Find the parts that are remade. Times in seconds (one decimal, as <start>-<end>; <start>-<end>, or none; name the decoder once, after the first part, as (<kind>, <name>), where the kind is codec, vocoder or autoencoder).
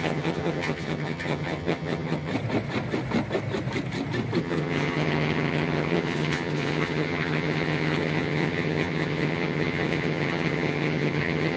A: 0.0-2.3 (vocoder, HiFi-GAN); 4.4-11.6